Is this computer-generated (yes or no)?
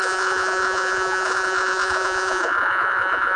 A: yes